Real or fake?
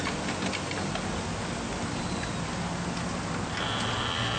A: real